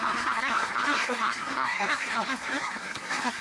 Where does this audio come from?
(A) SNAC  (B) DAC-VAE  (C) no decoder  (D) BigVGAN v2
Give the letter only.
A